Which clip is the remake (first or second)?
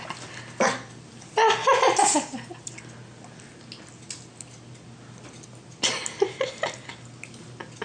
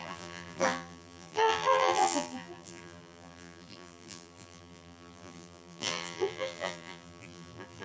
second